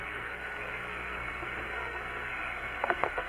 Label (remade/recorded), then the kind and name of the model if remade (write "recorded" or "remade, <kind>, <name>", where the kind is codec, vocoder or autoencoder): remade, codec, SNAC